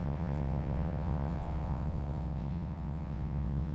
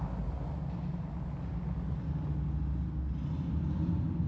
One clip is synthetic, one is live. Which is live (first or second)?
second